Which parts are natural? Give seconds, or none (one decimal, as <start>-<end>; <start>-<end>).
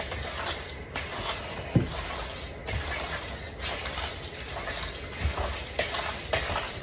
0.0-6.8